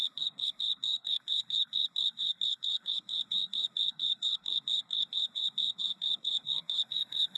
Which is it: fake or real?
fake